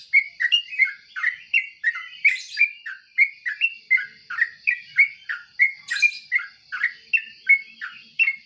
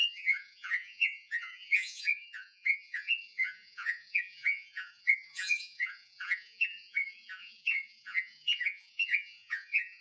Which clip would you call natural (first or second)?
first